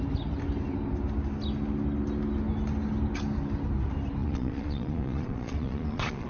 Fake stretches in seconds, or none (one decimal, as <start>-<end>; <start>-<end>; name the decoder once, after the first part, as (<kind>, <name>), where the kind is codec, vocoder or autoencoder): 4.2-6.3 (vocoder, Vocos)